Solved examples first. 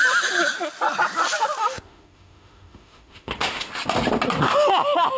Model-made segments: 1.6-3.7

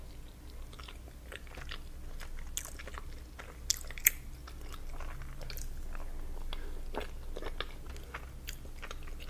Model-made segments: none

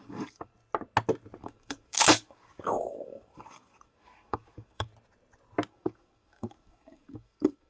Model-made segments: 0.0-0.5; 1.4-4.9; 5.7-7.7

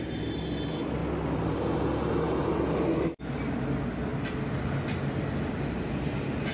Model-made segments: none

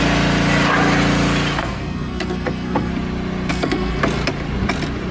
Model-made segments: 1.6-2.9; 3.5-4.0